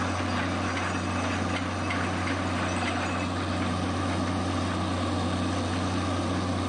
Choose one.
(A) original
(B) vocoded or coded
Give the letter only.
A